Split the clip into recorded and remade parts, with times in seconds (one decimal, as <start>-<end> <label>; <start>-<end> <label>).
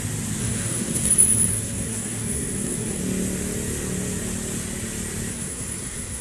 0.0-0.4 recorded; 0.4-1.1 remade; 1.1-1.5 recorded; 1.5-3.0 remade; 3.0-5.3 recorded; 5.3-6.2 remade